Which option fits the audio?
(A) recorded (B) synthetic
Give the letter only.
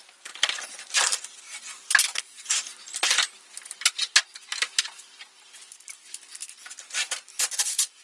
A